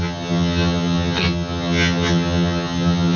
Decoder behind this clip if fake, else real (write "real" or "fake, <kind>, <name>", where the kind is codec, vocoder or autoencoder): fake, vocoder, HiFi-GAN